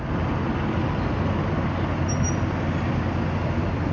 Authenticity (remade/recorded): recorded